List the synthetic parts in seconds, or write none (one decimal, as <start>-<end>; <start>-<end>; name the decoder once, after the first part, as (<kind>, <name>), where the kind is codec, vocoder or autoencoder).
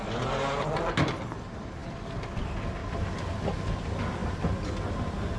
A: 2.8-3.3 (vocoder, BigVGAN v2)